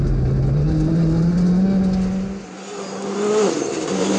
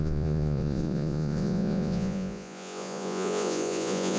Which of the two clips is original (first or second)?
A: first